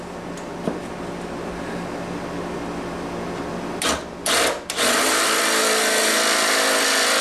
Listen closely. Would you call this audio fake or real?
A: real